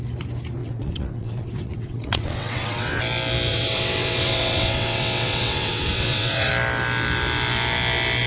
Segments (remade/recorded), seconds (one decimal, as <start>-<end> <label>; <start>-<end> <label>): 0.0-0.6 recorded; 0.6-3.0 remade; 3.0-3.5 recorded; 3.5-6.5 remade; 6.5-8.3 recorded